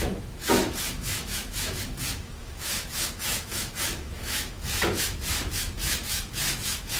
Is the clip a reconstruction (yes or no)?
yes